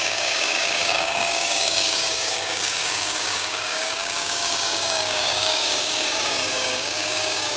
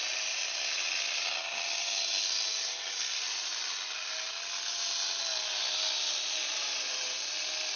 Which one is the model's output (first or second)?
first